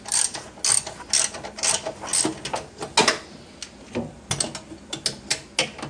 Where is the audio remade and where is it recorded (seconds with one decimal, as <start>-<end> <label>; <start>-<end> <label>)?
0.0-5.9 recorded